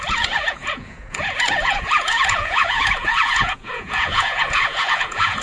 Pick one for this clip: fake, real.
fake